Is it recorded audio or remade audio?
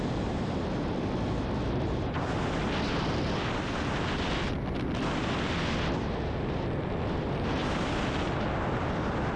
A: recorded